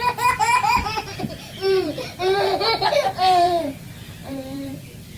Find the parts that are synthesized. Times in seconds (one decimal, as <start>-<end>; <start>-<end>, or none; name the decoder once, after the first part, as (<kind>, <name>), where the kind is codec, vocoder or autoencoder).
0.0-5.2 (vocoder, BigVGAN v2)